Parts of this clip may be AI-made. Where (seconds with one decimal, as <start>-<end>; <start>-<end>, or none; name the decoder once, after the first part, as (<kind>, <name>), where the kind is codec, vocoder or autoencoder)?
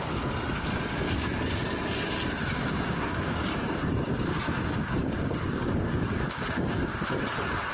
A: 2.4-7.0 (codec, DAC)